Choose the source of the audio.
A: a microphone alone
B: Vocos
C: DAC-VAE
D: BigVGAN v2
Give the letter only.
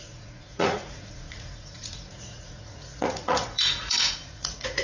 B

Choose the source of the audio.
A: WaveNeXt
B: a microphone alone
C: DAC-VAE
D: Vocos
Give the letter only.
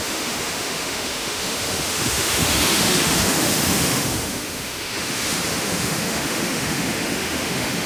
C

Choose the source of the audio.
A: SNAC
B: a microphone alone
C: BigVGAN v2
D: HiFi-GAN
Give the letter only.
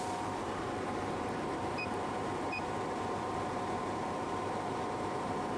C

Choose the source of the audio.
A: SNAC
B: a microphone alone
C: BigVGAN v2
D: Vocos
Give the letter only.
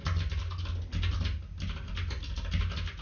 B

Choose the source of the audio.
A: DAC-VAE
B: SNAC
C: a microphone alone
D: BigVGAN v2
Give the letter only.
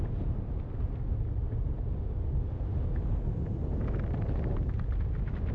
C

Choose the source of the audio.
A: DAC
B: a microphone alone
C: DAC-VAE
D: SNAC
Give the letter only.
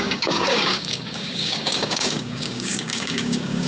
A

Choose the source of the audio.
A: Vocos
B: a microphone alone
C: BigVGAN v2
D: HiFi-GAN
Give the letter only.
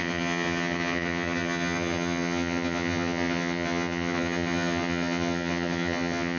D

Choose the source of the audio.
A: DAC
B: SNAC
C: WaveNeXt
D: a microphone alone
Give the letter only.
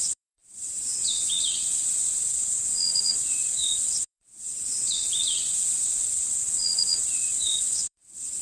C